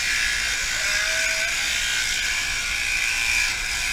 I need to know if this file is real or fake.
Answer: real